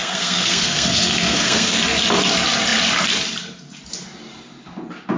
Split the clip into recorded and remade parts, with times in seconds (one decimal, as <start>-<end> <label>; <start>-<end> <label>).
0.0-1.8 remade; 1.8-5.2 recorded